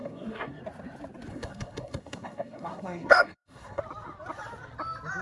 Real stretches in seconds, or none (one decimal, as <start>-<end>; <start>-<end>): 0.6-1.3; 3.8-5.2